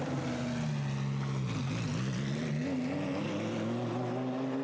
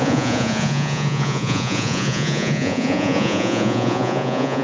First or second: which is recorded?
first